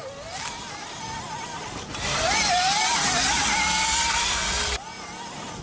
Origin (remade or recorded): recorded